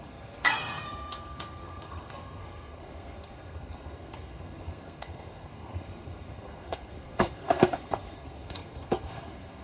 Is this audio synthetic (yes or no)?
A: yes